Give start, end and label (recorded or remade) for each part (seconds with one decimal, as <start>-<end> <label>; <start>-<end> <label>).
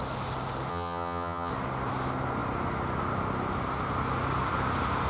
0.0-0.7 recorded; 0.7-1.5 remade; 1.5-5.1 recorded